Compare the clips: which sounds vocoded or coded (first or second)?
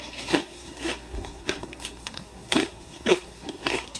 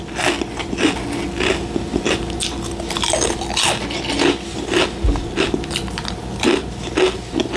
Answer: first